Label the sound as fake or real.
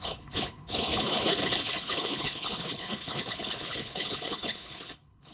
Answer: fake